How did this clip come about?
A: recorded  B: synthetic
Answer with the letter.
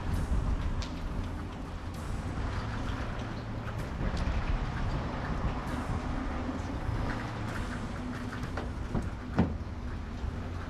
A